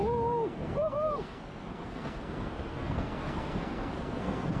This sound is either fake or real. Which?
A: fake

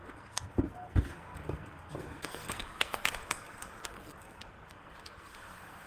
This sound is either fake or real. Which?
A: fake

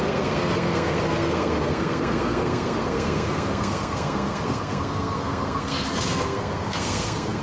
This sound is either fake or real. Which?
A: fake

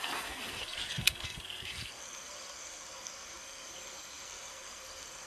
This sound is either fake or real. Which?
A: fake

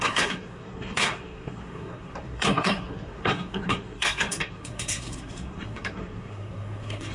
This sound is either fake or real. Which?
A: fake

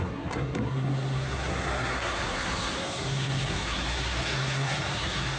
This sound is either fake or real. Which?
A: fake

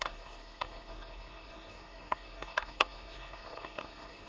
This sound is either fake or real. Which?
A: fake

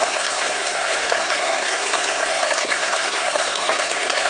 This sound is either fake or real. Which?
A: fake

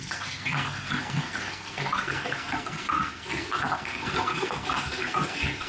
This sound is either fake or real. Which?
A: fake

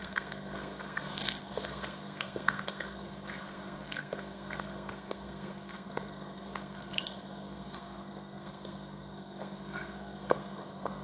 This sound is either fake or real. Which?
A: fake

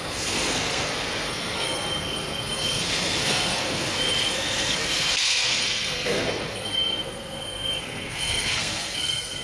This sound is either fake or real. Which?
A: fake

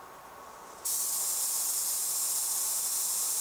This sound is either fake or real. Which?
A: real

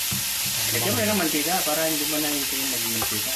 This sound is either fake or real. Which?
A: real